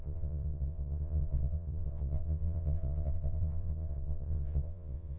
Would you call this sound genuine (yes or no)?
no